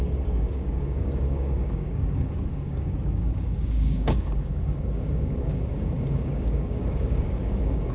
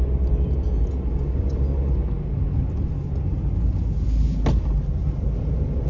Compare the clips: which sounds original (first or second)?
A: second